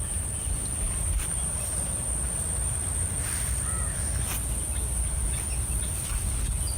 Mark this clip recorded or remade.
recorded